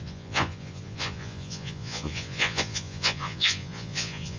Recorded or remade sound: remade